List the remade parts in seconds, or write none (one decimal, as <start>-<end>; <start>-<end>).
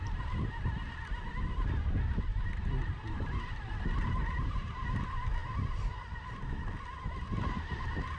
2.3-4.7